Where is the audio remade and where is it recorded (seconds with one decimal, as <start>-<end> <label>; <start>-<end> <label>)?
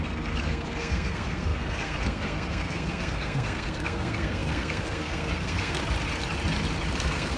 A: 0.0-5.8 remade; 5.8-7.0 recorded; 7.0-7.4 remade